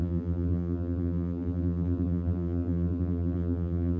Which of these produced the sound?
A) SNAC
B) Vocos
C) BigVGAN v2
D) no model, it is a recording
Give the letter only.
C